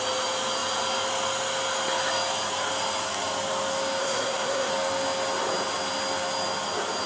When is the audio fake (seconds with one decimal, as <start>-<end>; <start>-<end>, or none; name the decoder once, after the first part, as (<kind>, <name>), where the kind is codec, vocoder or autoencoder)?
4.0-4.7 (codec, SNAC)